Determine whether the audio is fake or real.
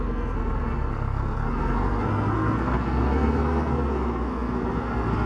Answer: fake